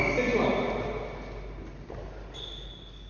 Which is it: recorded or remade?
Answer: recorded